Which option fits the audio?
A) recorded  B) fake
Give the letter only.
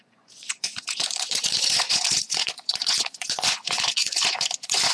B